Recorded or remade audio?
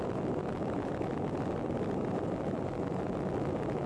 recorded